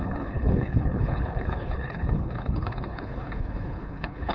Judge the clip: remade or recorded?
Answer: remade